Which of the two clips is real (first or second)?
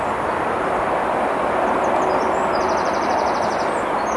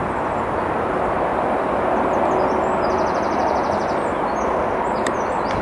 second